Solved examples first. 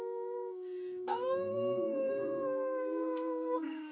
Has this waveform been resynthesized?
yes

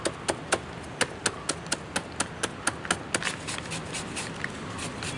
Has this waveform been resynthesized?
no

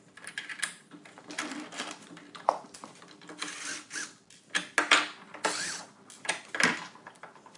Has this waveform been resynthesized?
no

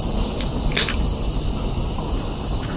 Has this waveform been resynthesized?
no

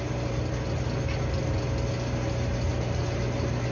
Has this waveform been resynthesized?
no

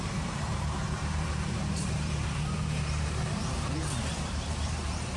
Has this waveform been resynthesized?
yes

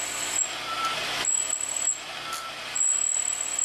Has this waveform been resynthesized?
no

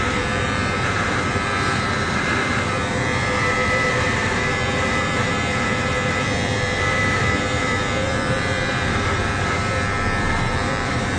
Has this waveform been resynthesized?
yes